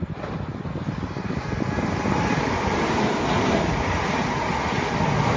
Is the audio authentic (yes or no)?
yes